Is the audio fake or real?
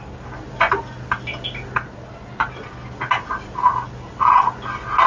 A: real